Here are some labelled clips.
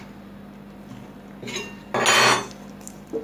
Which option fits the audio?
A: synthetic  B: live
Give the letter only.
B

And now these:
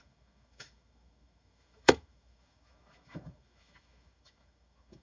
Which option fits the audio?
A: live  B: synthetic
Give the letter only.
B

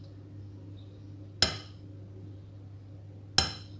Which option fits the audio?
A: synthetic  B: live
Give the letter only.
B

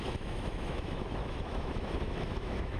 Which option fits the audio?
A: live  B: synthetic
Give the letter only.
B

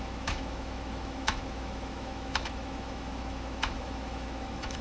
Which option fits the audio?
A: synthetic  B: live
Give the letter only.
A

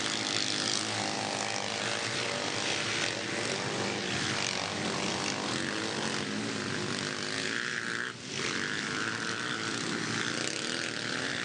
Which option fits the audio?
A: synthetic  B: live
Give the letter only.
B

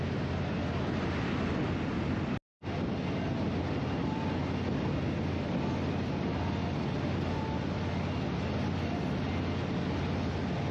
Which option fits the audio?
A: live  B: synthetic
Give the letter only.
A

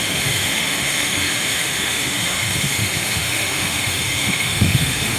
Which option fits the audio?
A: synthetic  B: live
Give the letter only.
A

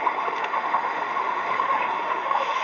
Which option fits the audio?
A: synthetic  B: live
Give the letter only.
A